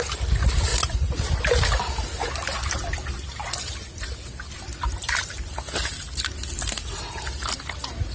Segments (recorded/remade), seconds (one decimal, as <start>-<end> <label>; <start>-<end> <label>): 0.0-8.1 recorded